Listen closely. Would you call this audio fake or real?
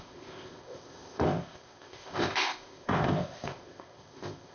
fake